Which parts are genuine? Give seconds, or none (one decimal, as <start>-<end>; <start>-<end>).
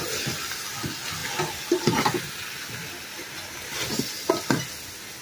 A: 0.0-5.2